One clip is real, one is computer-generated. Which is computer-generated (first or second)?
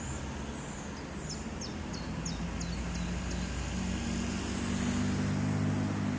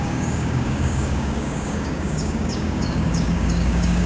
second